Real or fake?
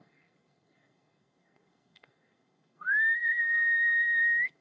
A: fake